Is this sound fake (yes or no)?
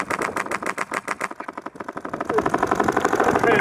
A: no